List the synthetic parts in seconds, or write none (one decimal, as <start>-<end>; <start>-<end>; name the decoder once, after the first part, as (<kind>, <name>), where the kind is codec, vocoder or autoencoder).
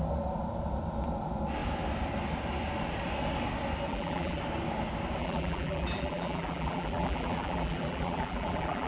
3.9-4.4 (vocoder, BigVGAN v2); 5.2-8.9